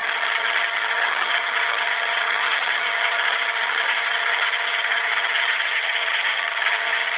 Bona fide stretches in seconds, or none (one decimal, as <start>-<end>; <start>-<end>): none